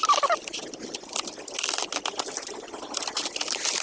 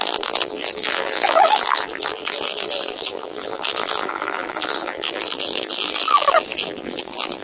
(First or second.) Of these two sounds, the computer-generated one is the second